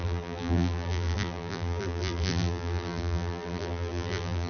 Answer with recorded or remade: remade